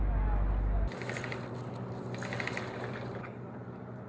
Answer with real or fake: real